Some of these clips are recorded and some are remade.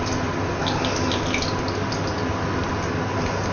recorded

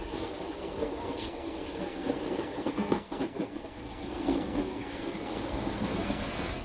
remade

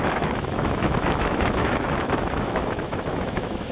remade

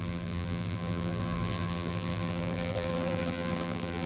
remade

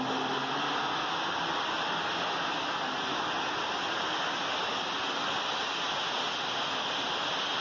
recorded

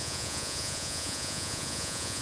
remade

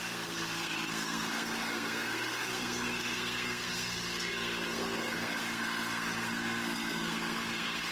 remade